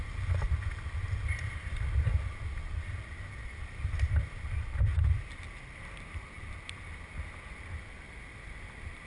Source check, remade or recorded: recorded